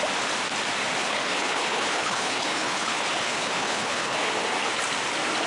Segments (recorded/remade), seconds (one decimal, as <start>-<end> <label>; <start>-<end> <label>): 0.0-1.0 recorded; 1.0-4.3 remade; 4.3-5.5 recorded